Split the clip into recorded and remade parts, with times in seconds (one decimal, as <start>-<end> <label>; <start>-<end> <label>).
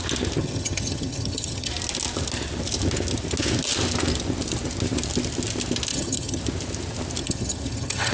0.0-0.4 recorded; 0.4-1.7 remade; 1.7-5.9 recorded; 5.9-6.4 remade; 6.4-7.2 recorded; 7.2-8.1 remade